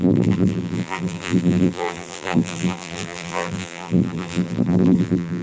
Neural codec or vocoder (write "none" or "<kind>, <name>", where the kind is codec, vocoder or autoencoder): vocoder, BigVGAN v2